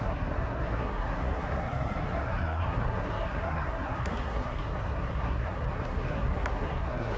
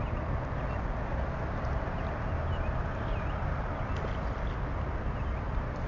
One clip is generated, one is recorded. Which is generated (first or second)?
first